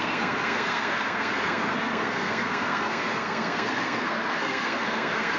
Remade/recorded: remade